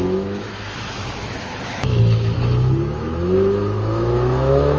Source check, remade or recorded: remade